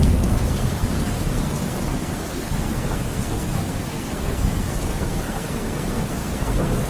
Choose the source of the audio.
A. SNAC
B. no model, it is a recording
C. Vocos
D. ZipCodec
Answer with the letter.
A